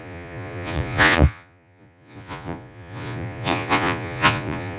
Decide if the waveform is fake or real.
fake